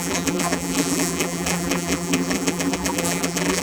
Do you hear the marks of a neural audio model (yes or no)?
yes